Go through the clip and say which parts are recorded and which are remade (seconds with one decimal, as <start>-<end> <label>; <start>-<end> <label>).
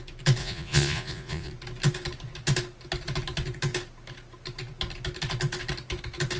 0.0-0.4 recorded; 0.4-1.5 remade; 1.5-6.4 recorded